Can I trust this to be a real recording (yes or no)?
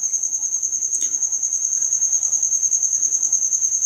no